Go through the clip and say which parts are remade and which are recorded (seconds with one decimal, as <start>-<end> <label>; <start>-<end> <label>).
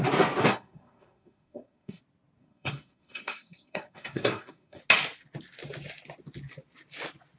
0.0-0.4 recorded; 0.4-2.0 remade; 2.0-2.4 recorded; 2.4-4.8 remade; 4.8-7.4 recorded